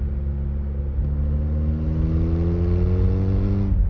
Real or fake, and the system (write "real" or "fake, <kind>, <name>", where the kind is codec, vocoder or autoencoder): real